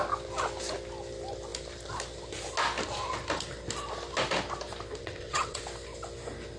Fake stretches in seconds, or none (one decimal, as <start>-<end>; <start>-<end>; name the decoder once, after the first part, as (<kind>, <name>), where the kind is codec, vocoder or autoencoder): 5.0-5.6 (vocoder, WaveNeXt)